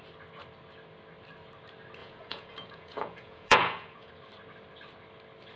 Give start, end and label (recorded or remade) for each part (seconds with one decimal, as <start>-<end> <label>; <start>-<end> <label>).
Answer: 0.0-2.0 recorded; 2.0-4.1 remade; 4.1-5.6 recorded